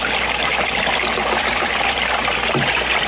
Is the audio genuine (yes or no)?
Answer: no